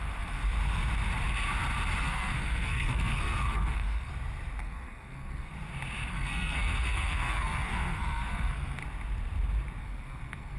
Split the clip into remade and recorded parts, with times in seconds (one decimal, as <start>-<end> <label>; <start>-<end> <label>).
0.0-0.4 remade; 0.4-2.0 recorded; 2.0-4.1 remade; 4.1-4.6 recorded; 4.6-5.5 remade; 5.5-6.1 recorded; 6.1-8.8 remade; 8.8-9.8 recorded; 9.8-10.6 remade